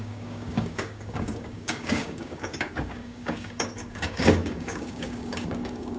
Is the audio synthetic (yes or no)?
yes